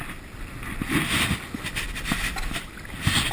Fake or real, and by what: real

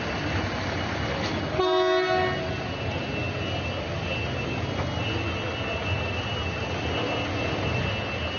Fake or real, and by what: real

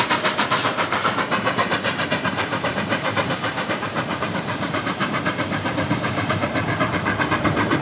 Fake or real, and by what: fake, vocoder, BigVGAN v2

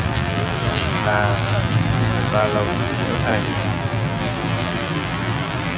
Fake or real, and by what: fake, vocoder, BigVGAN v2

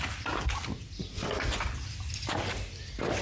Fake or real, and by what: real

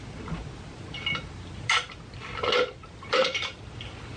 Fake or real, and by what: fake, vocoder, BigVGAN v2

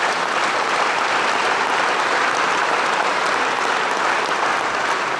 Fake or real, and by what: real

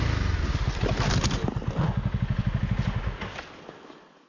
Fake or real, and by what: real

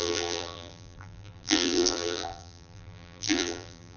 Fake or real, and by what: fake, vocoder, BigVGAN v2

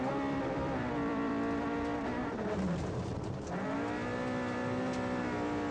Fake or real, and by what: fake, vocoder, BigVGAN v2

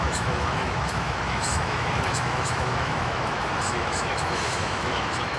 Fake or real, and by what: fake, autoencoder, DAC-VAE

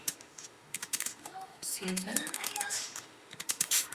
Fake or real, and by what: fake, autoencoder, DAC-VAE